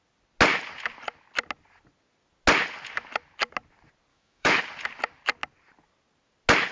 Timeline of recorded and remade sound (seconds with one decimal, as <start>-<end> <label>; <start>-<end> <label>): 0.0-4.1 recorded; 4.1-4.6 remade; 4.6-6.7 recorded